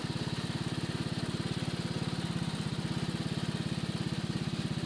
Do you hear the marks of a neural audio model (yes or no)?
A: no